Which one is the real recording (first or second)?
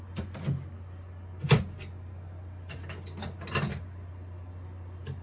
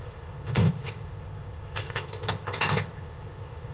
first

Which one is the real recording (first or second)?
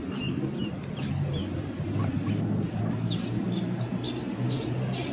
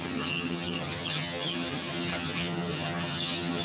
first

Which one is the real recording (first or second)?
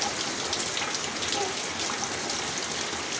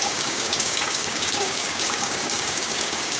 first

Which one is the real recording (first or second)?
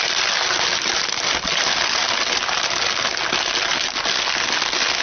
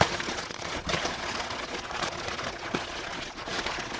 first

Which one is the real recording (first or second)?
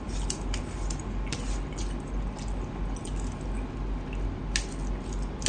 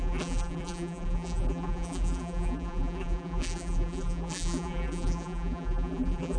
first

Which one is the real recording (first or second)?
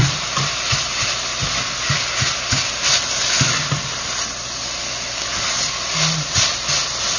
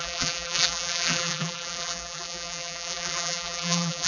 first